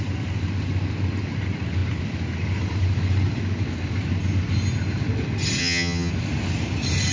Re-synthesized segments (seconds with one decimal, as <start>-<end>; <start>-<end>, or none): 5.6-6.1